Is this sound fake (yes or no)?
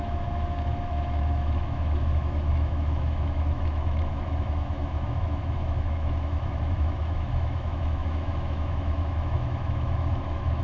yes